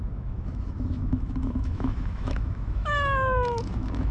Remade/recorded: remade